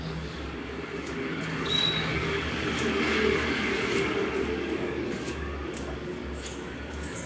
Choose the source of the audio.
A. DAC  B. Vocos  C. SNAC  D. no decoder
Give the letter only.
A